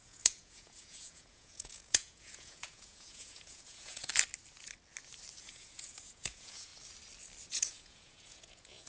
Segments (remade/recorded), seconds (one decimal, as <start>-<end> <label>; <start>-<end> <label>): 0.0-4.1 remade; 4.1-5.4 recorded; 5.4-6.7 remade; 6.7-7.5 recorded; 7.5-8.9 remade